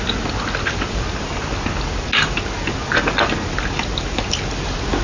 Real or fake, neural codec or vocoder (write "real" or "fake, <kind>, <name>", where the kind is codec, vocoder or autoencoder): real